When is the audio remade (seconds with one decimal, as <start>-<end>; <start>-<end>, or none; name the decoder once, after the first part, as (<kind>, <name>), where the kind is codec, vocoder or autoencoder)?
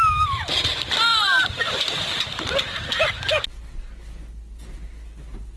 1.1-2.9 (vocoder, BigVGAN v2)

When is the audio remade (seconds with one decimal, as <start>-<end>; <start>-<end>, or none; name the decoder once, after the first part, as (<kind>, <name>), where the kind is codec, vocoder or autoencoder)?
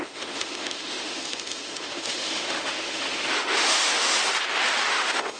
0.0-4.2 (autoencoder, DAC-VAE); 4.9-5.4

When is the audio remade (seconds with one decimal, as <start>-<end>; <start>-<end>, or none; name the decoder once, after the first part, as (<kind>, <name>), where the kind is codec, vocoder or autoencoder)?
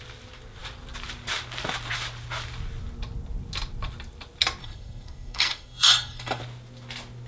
4.6-6.4 (codec, SNAC)